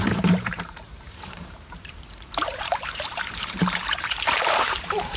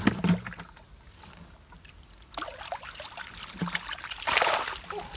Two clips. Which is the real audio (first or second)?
second